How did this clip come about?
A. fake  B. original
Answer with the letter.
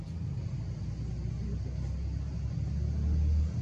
B